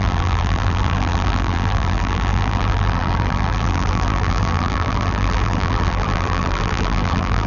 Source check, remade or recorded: remade